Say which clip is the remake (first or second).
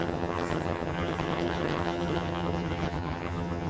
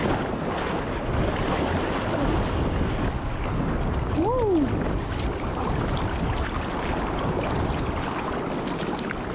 first